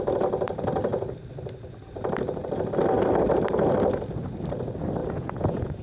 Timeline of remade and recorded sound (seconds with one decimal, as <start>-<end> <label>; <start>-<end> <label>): 0.0-5.0 recorded; 5.0-5.8 remade